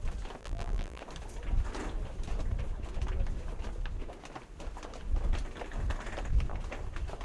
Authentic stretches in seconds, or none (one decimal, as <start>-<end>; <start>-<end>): 0.0-0.4; 1.0-7.2